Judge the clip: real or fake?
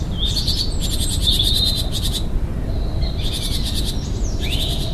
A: real